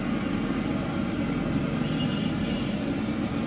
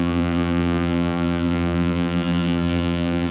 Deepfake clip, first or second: second